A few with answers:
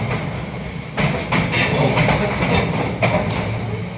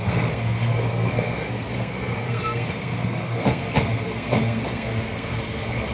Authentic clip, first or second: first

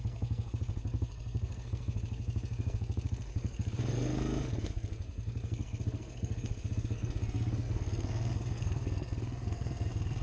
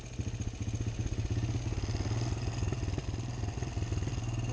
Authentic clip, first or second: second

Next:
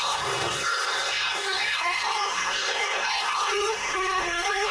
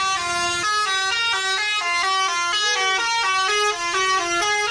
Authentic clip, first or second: second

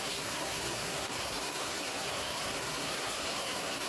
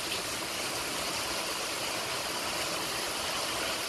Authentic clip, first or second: second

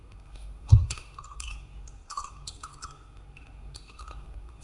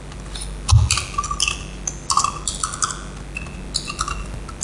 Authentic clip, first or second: second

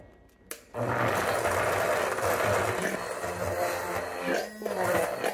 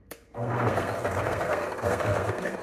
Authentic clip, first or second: first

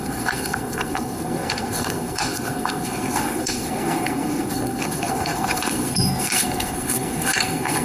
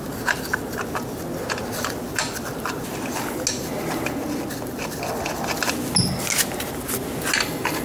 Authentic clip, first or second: second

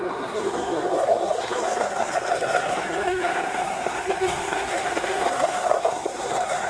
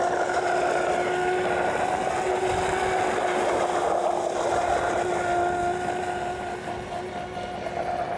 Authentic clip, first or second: second